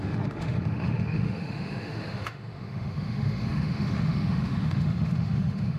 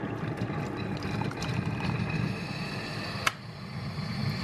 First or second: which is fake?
first